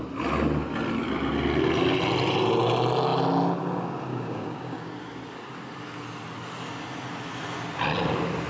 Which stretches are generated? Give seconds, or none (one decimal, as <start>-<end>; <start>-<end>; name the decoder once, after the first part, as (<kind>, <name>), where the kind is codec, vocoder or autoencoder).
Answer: 4.1-4.9 (codec, DAC)